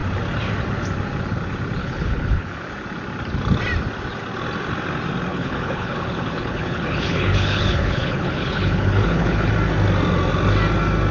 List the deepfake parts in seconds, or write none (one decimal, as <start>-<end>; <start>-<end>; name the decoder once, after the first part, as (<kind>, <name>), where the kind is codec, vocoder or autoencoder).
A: 1.8-2.6 (codec, HILCodec); 5.3-9.5